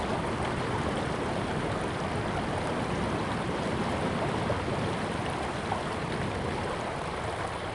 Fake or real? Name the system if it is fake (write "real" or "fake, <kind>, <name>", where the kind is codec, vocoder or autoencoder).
real